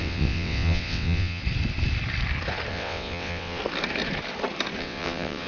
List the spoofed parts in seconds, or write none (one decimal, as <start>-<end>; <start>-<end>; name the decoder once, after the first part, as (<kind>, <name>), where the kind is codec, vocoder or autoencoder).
0.0-1.4 (vocoder, WaveNeXt); 2.7-3.6; 4.8-5.5